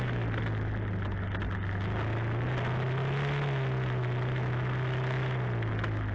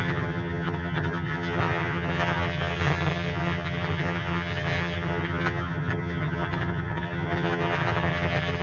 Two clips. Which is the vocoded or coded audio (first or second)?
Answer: second